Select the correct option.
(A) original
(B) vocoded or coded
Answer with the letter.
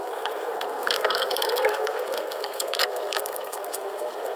B